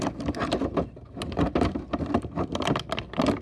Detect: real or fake real